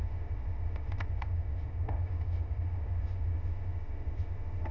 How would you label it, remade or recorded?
remade